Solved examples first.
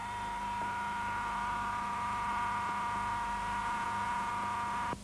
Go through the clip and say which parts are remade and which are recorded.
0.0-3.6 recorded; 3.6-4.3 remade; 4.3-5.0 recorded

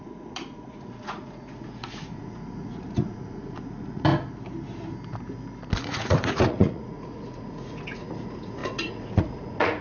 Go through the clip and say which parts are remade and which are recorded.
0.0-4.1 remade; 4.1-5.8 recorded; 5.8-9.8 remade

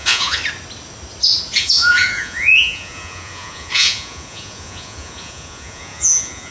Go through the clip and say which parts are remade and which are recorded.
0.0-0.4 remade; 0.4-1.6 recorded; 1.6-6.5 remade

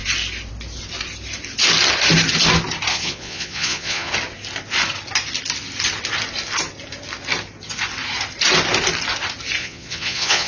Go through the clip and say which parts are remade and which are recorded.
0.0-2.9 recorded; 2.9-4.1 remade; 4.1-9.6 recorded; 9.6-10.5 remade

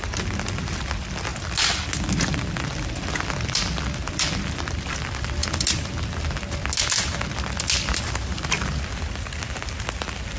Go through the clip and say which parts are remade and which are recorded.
0.0-10.4 recorded